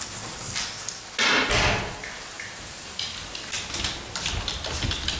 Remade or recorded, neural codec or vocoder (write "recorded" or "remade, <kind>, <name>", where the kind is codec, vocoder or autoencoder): recorded